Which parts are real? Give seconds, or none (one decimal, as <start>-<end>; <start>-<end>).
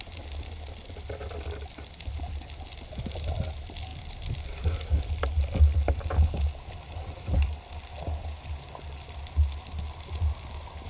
0.0-10.9